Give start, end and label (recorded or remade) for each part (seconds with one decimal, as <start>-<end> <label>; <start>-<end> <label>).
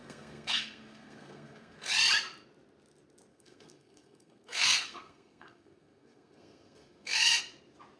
0.0-1.9 remade; 1.9-3.3 recorded; 3.3-7.4 remade; 7.4-8.0 recorded